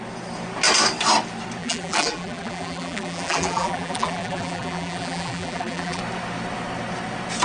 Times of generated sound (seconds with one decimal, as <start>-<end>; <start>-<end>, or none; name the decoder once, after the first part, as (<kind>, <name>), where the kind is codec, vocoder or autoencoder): 1.6-6.0 (vocoder, BigVGAN v2)